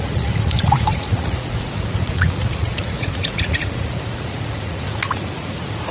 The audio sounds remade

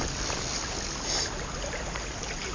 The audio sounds recorded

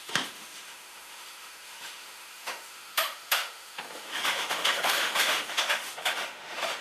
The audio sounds remade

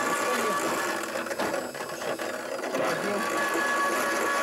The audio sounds recorded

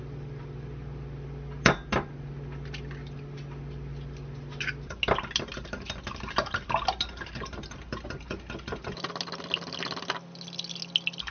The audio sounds recorded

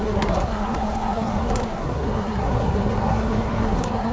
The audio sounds remade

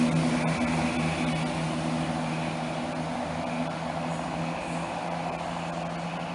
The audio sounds recorded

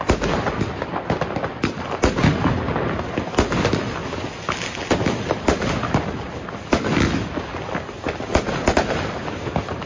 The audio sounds recorded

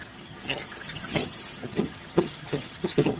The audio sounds remade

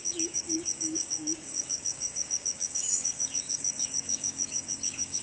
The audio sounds remade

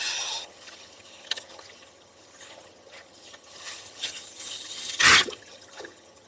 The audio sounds remade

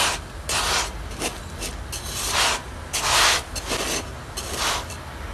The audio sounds recorded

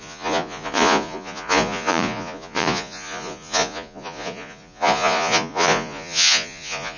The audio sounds remade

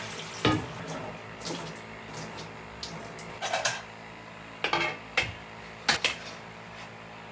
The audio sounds recorded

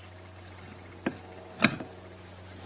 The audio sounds recorded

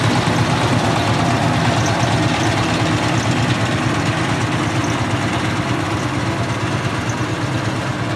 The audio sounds recorded